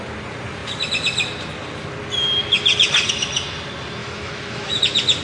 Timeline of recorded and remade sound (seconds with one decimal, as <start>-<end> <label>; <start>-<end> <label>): 0.0-4.0 recorded; 4.0-4.8 remade; 4.8-5.2 recorded